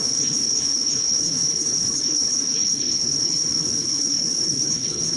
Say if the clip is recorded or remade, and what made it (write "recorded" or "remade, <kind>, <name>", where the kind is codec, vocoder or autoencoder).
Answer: remade, codec, HILCodec